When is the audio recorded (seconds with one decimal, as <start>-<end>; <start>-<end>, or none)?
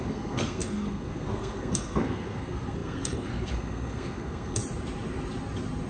4.6-5.9